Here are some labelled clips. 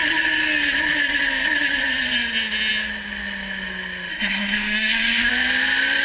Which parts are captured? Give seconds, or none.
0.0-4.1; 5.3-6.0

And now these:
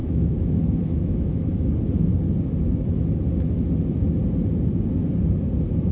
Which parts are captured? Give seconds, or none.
1.5-5.9

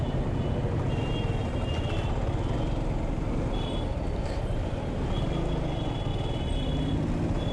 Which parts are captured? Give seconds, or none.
0.0-7.5